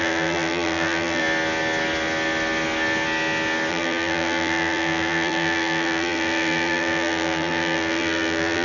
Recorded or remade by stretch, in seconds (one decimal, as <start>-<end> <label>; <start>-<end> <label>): 0.0-1.2 remade; 1.2-3.7 recorded; 3.7-8.6 remade